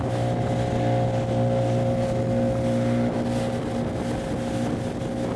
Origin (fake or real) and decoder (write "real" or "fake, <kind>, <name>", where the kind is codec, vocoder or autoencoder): real